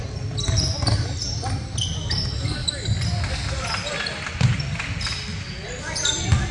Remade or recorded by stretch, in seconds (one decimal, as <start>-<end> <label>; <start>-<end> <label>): 0.0-6.5 recorded